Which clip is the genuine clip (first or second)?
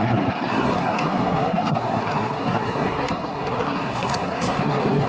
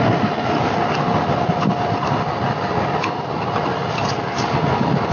second